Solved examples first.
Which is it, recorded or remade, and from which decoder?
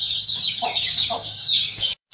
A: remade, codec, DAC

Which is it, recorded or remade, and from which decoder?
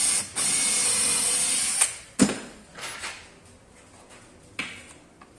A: recorded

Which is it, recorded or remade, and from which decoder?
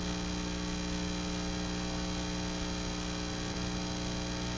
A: recorded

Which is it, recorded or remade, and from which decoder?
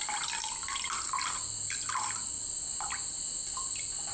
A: recorded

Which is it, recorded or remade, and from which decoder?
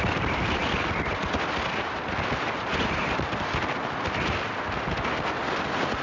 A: recorded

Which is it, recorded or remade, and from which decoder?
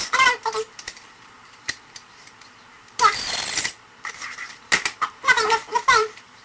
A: remade, vocoder, BigVGAN v2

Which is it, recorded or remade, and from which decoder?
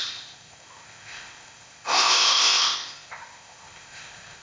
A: remade, codec, ZipCodec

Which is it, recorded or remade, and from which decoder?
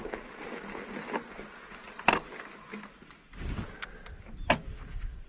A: recorded